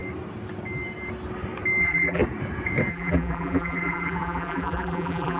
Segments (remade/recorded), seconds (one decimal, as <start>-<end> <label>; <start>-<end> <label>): 0.0-1.8 recorded; 1.8-2.2 remade; 2.2-2.9 recorded; 2.9-5.4 remade